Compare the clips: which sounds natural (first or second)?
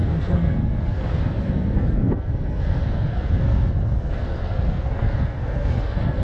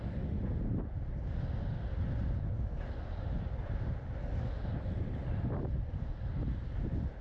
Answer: second